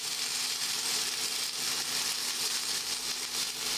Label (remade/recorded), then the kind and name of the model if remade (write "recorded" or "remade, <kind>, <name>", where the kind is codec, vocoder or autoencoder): recorded